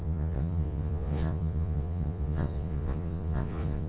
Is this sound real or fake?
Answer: fake